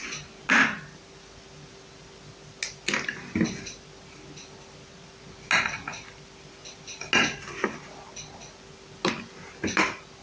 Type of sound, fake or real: real